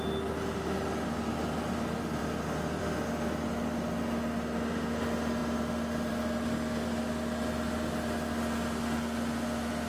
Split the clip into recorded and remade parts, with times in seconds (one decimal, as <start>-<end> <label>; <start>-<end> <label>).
0.0-9.9 recorded